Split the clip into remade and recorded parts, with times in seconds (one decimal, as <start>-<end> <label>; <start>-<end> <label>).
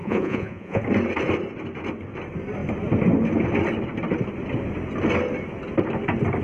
0.0-0.8 remade; 0.8-6.4 recorded